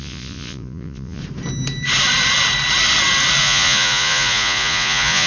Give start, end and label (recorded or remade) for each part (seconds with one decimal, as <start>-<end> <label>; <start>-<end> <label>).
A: 0.0-1.2 remade; 1.2-3.4 recorded; 3.4-5.3 remade